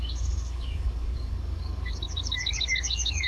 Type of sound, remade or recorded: remade